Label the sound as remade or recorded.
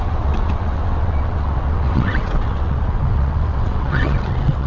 remade